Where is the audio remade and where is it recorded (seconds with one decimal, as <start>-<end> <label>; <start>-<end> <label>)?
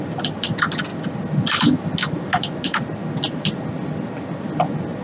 0.0-5.0 recorded